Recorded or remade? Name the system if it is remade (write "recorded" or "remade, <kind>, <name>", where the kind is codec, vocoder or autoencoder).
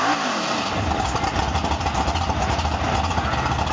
recorded